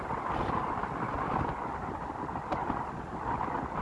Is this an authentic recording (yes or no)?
yes